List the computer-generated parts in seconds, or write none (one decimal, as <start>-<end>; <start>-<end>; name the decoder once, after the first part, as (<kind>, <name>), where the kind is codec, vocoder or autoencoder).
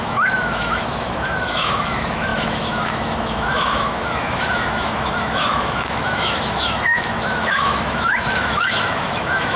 0.0-9.6 (autoencoder, DAC-VAE)